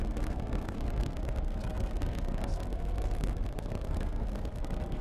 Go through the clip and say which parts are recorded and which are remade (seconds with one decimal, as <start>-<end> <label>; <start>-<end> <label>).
0.0-5.0 remade